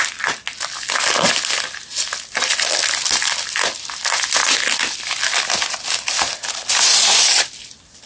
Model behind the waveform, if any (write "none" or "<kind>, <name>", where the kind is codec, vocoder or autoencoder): none